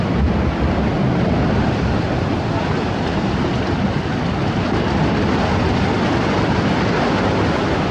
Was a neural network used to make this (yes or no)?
yes